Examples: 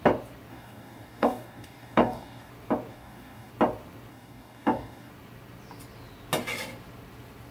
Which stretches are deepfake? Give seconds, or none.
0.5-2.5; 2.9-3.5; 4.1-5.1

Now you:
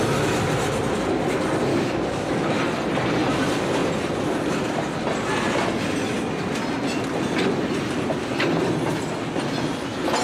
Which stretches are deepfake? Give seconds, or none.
1.7-2.6